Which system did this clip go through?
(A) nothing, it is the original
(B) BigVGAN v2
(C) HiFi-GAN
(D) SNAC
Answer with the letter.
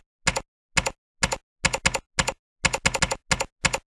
A